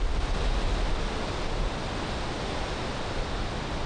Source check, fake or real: real